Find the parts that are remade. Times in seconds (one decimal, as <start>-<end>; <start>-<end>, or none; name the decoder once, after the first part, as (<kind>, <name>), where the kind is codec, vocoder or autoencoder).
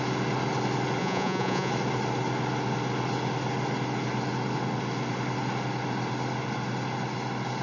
1.0-1.7 (vocoder, Vocos)